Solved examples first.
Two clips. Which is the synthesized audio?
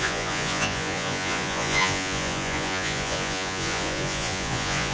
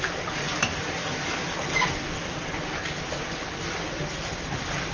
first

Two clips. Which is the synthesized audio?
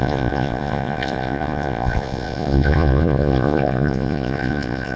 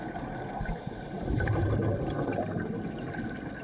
first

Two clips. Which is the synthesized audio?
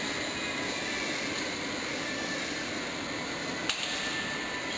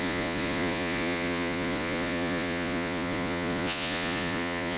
second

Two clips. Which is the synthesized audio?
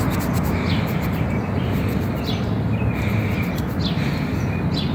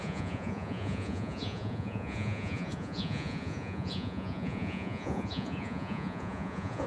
second